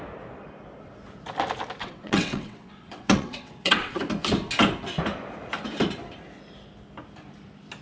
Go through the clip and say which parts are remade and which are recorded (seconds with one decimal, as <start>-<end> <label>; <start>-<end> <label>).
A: 0.0-1.8 recorded; 1.8-4.0 remade; 4.0-7.8 recorded

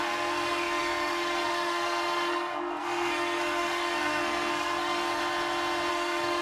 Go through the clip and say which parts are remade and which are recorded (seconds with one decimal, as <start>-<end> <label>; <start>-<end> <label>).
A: 0.0-5.2 remade; 5.2-5.9 recorded; 5.9-6.4 remade

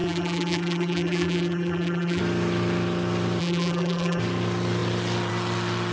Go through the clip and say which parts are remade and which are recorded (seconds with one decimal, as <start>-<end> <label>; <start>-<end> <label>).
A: 0.0-2.2 remade; 2.2-3.4 recorded; 3.4-4.2 remade; 4.2-5.9 recorded

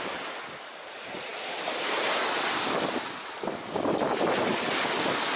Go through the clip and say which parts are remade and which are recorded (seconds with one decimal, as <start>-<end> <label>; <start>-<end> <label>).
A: 0.0-5.4 recorded